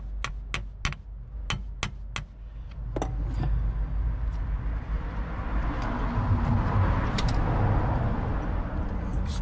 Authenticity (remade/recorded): recorded